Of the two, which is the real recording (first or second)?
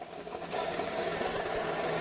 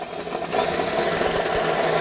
second